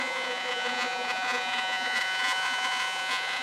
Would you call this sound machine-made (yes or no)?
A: yes